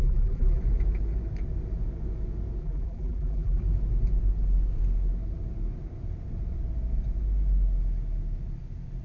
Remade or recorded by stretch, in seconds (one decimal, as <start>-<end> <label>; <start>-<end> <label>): 0.0-0.6 remade; 0.6-2.6 recorded; 2.6-3.6 remade; 3.6-9.0 recorded